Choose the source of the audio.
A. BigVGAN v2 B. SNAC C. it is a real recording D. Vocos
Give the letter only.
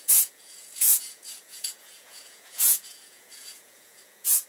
D